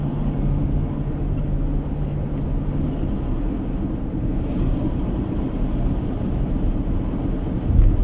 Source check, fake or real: real